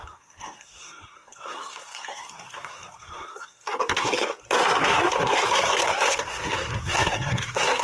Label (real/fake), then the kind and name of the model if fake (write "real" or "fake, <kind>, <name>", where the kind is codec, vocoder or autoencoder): fake, codec, SNAC